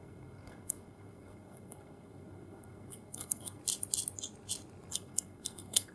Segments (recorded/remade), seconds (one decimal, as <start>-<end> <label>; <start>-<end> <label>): 0.0-3.6 remade; 3.6-4.9 recorded; 4.9-5.9 remade